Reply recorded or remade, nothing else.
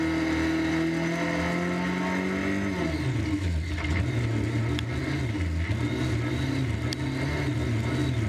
recorded